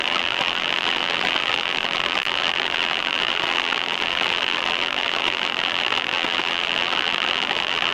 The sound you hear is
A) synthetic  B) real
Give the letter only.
A